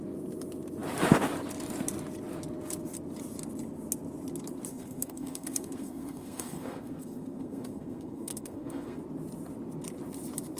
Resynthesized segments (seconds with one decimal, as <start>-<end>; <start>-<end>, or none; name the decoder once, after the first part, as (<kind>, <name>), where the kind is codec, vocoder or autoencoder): 4.7-9.0 (codec, SNAC)